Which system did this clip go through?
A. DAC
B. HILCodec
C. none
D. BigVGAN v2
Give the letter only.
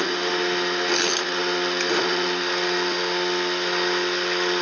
C